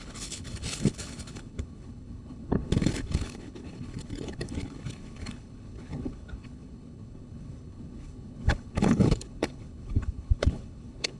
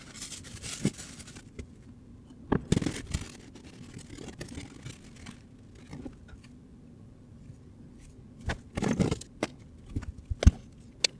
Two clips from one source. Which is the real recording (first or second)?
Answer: second